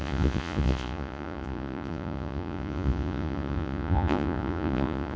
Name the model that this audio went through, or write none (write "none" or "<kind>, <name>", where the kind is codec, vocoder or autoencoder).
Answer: vocoder, Vocos